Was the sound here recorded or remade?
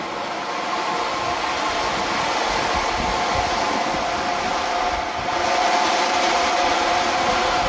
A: recorded